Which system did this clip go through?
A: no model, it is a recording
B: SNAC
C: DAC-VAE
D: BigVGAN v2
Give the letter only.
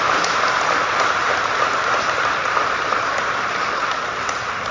D